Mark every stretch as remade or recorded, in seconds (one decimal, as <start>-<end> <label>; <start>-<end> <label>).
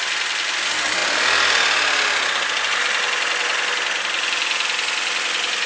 0.0-5.7 recorded